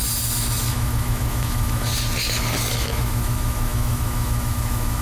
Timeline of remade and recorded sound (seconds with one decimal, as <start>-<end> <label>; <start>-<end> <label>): 0.0-0.7 recorded; 0.7-1.9 remade; 1.9-2.7 recorded; 2.7-5.0 remade